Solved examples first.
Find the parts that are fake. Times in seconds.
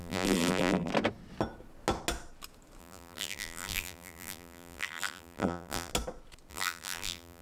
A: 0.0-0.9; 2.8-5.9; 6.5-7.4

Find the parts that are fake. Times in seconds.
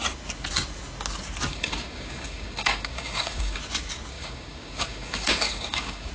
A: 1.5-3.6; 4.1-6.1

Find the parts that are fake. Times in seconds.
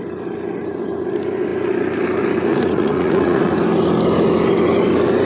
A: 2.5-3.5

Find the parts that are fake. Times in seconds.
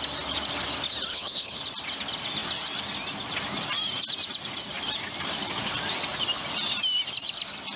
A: 1.1-1.6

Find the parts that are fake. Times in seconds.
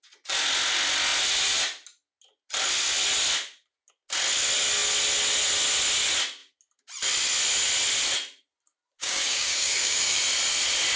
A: 9.0-10.2